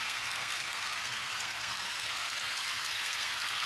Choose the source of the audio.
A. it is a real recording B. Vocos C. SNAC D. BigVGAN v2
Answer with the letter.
C